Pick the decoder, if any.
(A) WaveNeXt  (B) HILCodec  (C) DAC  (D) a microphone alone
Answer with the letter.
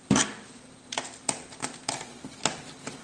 D